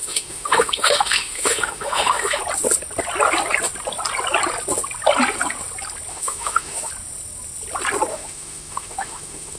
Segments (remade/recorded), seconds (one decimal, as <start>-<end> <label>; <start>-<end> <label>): 0.0-2.4 remade; 2.4-6.1 recorded; 6.1-6.9 remade; 6.9-8.1 recorded; 8.1-9.6 remade

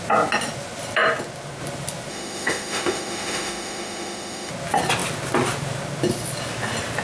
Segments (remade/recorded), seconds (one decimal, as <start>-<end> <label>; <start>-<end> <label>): 0.0-2.1 recorded; 2.1-4.5 remade; 4.5-7.0 recorded